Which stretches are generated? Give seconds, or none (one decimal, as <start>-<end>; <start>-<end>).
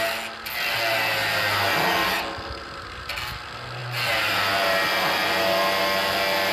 none